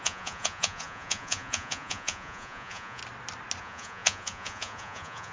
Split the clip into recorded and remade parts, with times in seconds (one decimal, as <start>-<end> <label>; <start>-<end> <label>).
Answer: 0.0-3.0 remade; 3.0-3.6 recorded; 3.6-5.3 remade